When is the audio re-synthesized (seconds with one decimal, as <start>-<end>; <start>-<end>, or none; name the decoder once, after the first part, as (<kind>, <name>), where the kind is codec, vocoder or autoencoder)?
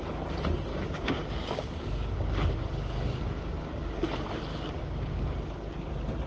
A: 0.7-4.0 (codec, DAC); 4.5-5.3